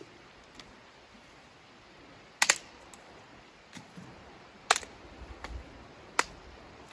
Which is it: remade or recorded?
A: recorded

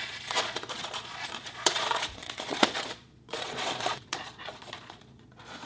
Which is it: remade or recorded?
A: remade